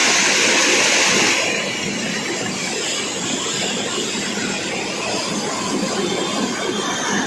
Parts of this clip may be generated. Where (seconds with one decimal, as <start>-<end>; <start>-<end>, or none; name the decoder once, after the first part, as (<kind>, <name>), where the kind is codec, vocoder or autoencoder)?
none